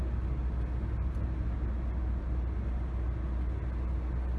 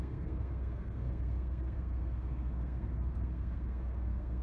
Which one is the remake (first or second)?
second